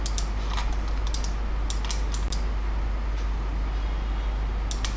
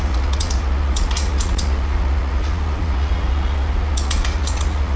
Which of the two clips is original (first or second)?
first